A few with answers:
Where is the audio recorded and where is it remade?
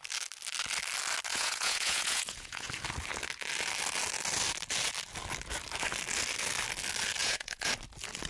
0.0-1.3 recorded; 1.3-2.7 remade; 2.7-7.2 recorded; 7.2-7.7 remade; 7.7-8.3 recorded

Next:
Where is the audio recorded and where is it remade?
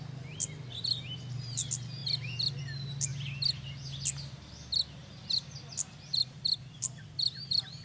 0.0-7.8 recorded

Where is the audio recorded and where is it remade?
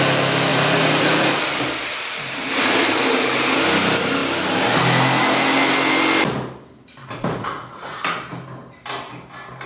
0.0-0.5 recorded; 0.5-1.4 remade; 1.4-7.0 recorded; 7.0-8.0 remade; 8.0-9.7 recorded